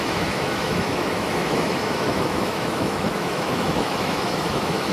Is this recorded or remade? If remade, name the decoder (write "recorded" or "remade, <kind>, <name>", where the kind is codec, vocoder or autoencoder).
remade, autoencoder, DAC-VAE